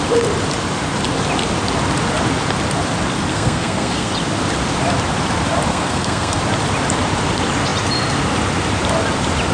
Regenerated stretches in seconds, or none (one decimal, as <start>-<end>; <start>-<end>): 3.3-4.1; 5.7-6.4